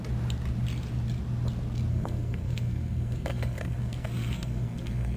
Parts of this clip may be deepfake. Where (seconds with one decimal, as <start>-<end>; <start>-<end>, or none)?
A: 1.9-5.2